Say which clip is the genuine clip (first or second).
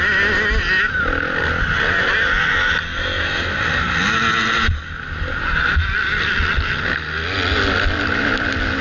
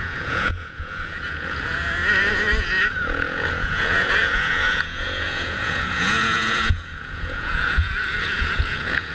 first